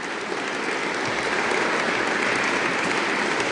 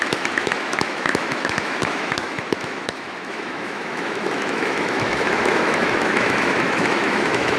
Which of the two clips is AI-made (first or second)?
second